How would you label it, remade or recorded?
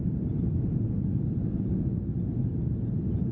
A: recorded